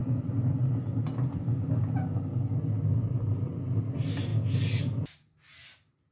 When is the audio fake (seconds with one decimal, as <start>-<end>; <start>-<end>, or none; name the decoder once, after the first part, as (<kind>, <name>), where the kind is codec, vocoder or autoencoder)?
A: none